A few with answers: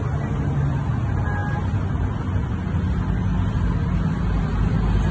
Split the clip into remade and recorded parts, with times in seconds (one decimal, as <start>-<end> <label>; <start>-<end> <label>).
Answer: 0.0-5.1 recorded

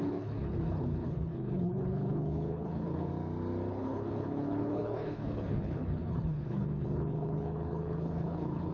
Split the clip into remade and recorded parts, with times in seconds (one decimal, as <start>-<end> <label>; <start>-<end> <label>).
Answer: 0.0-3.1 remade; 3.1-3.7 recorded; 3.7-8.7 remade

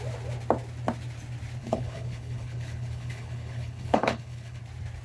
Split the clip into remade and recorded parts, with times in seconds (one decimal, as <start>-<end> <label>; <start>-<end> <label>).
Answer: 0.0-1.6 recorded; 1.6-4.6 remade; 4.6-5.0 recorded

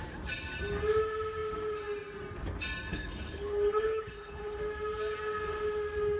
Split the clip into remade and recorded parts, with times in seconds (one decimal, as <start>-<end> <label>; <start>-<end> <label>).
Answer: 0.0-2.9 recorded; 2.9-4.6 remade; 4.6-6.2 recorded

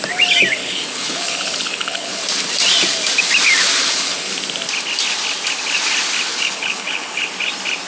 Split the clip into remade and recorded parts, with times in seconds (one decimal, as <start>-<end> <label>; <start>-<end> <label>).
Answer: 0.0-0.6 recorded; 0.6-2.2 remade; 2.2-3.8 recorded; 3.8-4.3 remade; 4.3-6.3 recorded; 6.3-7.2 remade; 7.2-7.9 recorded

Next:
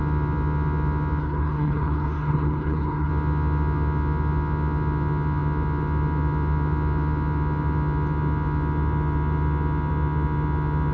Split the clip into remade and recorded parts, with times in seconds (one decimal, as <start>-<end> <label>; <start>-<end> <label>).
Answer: 0.0-1.2 recorded; 1.2-3.1 remade; 3.1-10.9 recorded

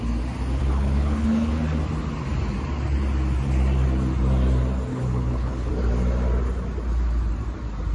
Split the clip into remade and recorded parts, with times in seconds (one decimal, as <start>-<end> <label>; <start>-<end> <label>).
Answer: 0.0-0.6 recorded; 0.6-1.5 remade; 1.5-4.9 recorded; 4.9-5.7 remade; 5.7-7.9 recorded